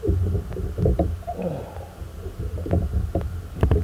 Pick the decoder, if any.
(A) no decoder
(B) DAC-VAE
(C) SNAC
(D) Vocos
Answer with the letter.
A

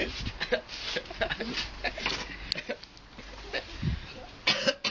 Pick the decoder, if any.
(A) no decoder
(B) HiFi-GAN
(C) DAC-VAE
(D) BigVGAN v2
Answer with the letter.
A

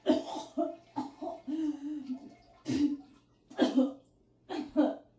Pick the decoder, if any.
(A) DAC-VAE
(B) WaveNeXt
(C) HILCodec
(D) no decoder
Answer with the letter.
D